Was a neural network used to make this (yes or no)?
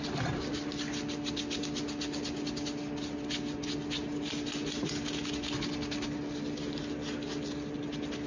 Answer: no